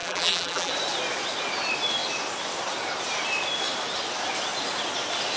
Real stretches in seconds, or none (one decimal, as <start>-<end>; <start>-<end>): 0.7-5.4